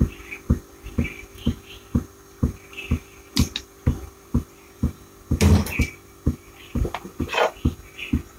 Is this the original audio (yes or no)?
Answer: yes